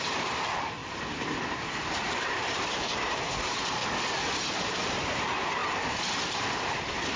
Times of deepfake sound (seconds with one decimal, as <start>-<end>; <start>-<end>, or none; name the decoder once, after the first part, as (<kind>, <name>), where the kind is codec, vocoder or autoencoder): 0.0-0.8 (vocoder, BigVGAN v2); 2.1-3.8; 4.5-5.6; 6.3-7.2